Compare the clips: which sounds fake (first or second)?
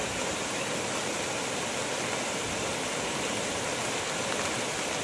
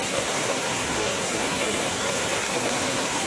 second